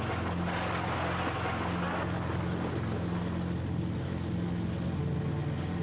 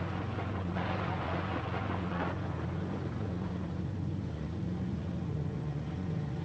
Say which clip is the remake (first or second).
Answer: second